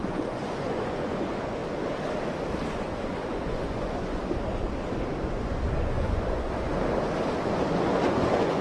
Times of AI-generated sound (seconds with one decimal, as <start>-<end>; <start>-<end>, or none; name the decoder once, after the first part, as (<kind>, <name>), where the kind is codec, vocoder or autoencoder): 0.0-1.6 (vocoder, Vocos); 2.7-4.2; 5.2-6.7; 7.4-8.6